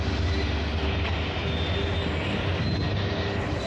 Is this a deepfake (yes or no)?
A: no